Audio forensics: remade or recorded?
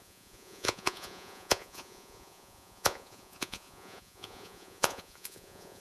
remade